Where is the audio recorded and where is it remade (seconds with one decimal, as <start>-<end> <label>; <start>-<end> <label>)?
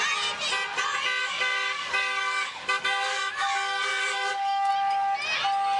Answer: 0.0-1.2 recorded; 1.2-4.7 remade; 4.7-5.8 recorded